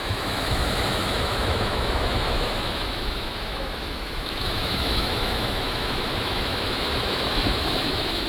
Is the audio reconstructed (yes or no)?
yes